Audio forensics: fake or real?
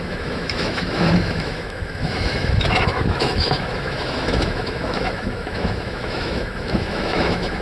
fake